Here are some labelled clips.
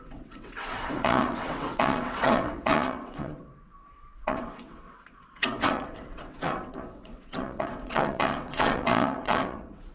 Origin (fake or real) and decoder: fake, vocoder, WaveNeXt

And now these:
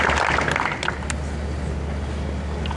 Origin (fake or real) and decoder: real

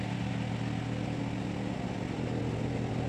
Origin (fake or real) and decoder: real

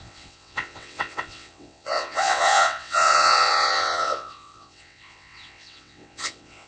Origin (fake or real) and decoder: fake, vocoder, WaveNeXt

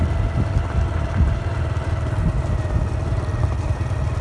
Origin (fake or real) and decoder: real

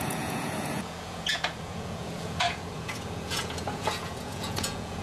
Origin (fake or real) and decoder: fake, vocoder, Vocos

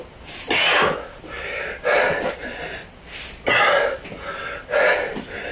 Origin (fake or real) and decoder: real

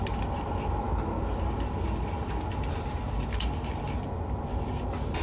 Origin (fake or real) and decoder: real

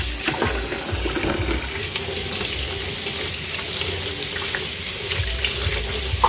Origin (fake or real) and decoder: real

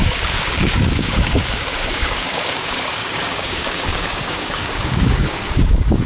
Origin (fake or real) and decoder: fake, codec, DAC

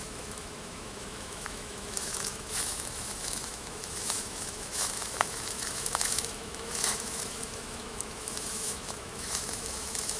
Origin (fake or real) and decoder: fake, autoencoder, DAC-VAE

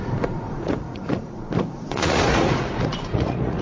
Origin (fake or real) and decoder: fake, vocoder, Vocos